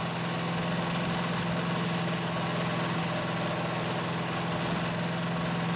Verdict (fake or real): real